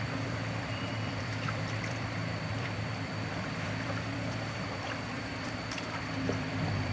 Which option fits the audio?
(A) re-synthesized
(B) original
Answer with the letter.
A